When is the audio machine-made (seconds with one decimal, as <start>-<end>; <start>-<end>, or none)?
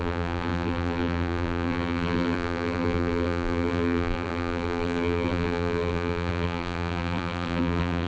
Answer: 0.0-8.1